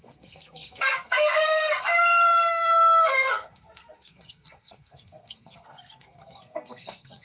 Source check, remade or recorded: remade